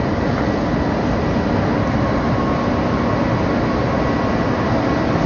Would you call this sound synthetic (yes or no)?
no